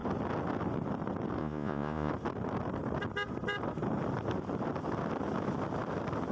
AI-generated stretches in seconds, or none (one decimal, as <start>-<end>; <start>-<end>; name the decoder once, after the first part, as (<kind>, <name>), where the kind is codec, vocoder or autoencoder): 1.4-2.1 (vocoder, Vocos)